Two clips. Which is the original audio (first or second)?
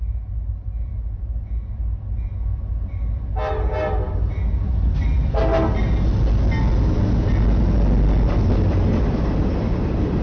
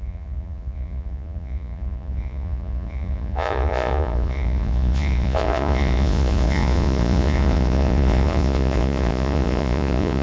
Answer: first